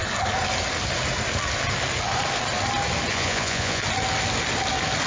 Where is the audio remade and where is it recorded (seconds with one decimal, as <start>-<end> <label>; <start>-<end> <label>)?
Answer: 0.0-3.1 recorded; 3.1-3.8 remade; 3.8-5.1 recorded